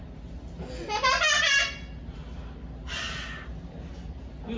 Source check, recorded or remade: recorded